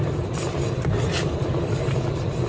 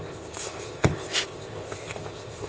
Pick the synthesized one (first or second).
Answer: second